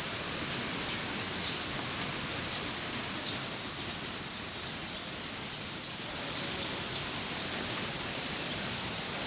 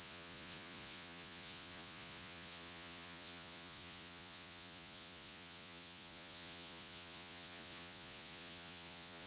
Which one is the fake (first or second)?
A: second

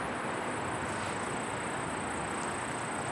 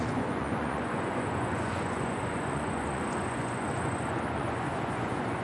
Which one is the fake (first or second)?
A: second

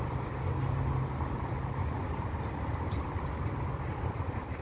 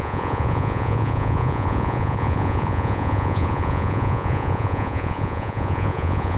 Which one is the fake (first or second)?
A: second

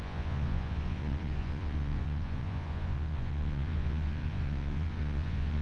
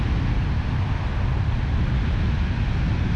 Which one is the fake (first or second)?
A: first